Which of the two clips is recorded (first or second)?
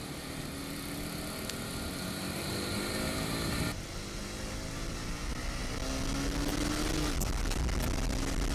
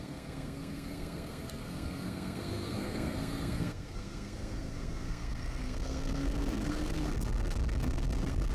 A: first